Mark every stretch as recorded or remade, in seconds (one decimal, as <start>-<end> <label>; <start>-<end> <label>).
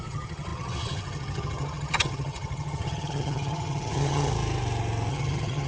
0.0-4.3 remade; 4.3-5.1 recorded; 5.1-5.7 remade